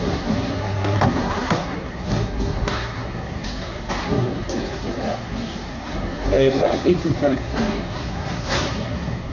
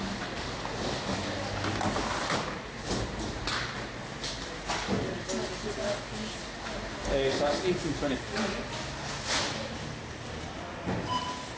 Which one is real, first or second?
second